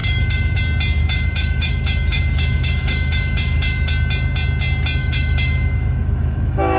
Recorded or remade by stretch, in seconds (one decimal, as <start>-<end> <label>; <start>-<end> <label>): 0.0-0.6 remade; 0.6-1.0 recorded; 1.0-3.9 remade; 3.9-5.0 recorded; 5.0-6.8 remade